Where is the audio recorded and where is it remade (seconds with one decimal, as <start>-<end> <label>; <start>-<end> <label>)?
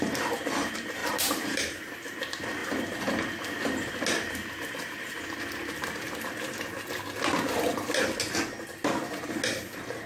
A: 0.0-1.0 recorded; 1.0-2.2 remade; 2.2-10.1 recorded